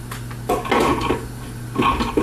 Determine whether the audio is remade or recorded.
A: recorded